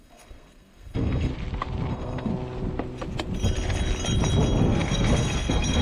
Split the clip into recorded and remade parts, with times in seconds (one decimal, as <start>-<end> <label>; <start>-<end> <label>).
0.0-1.3 remade; 1.3-1.9 recorded; 1.9-2.3 remade; 2.3-4.6 recorded; 4.6-5.8 remade